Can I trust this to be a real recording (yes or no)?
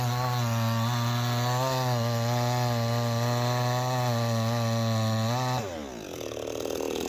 yes